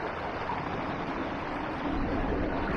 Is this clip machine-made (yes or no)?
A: no